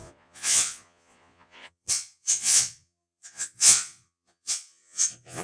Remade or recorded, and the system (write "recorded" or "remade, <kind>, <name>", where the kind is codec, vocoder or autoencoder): remade, vocoder, Vocos